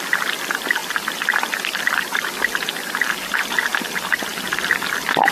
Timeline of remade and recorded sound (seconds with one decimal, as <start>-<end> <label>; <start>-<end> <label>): 0.0-5.3 recorded